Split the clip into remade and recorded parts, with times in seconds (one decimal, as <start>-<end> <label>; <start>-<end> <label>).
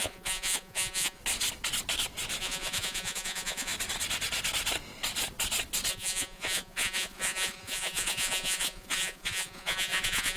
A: 0.0-1.2 remade; 1.2-2.4 recorded; 2.4-3.7 remade; 3.7-5.9 recorded; 5.9-10.4 remade